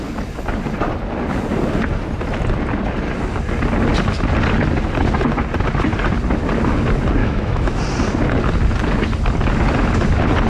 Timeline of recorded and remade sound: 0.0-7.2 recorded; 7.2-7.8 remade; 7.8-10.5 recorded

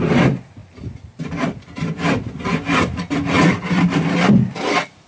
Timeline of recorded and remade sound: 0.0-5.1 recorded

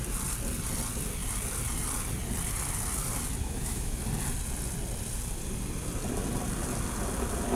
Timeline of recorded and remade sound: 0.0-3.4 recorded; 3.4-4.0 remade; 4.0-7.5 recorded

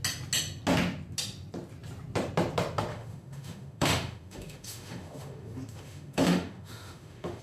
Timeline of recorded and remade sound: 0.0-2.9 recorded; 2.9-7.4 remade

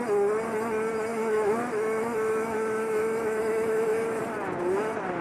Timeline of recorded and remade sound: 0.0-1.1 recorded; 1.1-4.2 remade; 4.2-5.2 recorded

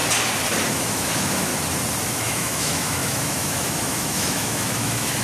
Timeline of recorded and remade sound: 0.0-0.7 recorded; 0.7-1.5 remade; 1.5-2.1 recorded; 2.1-5.2 remade

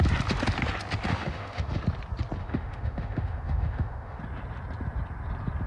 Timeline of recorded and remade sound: 0.0-1.1 recorded; 1.1-1.8 remade; 1.8-2.4 recorded; 2.4-4.2 remade; 4.2-5.7 recorded

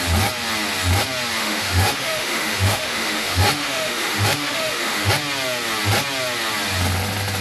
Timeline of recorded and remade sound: 0.0-1.4 recorded; 1.4-5.1 remade; 5.1-7.4 recorded